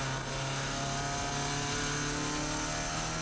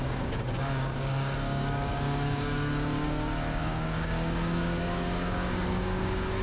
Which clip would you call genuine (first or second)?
first